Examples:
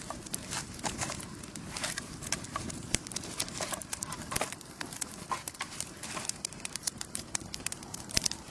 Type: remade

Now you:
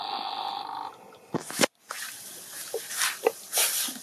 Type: recorded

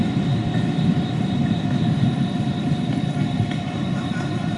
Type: remade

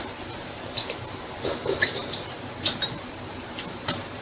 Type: remade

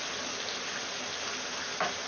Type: recorded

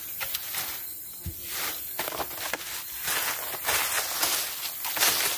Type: recorded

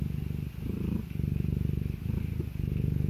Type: remade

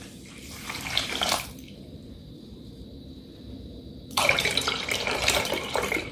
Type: remade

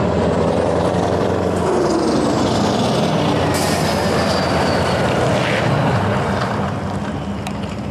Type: remade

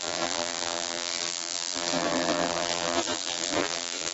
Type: remade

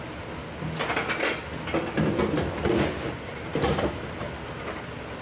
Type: recorded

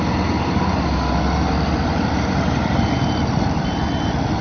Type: recorded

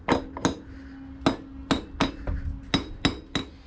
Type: recorded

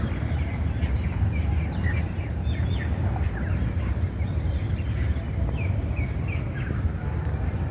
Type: remade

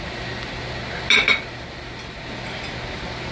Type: recorded